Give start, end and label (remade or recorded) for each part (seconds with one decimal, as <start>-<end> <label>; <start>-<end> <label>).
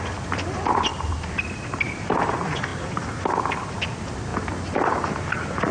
0.0-0.9 remade; 0.9-2.0 recorded; 2.0-4.3 remade; 4.3-4.9 recorded; 4.9-5.7 remade